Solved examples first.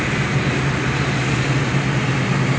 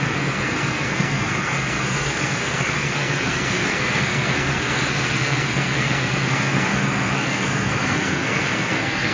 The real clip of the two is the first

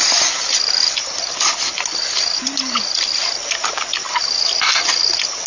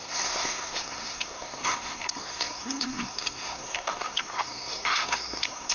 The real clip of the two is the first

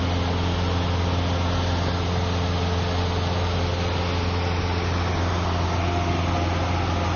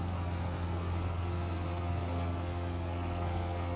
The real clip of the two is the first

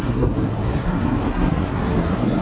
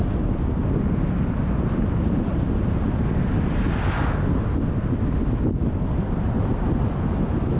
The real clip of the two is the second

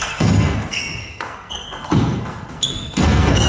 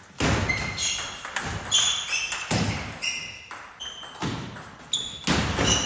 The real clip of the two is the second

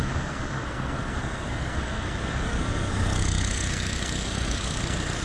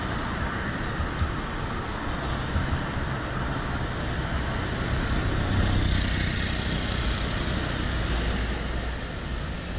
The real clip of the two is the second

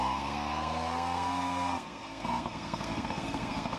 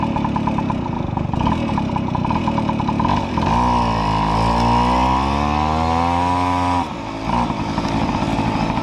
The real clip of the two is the second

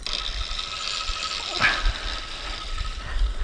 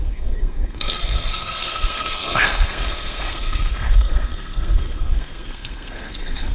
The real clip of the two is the first